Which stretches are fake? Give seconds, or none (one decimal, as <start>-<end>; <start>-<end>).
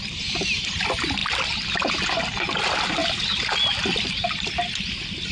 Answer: none